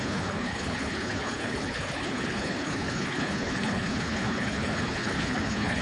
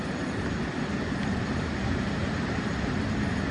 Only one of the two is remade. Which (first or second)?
first